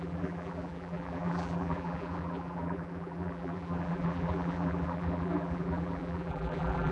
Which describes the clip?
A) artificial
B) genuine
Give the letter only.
A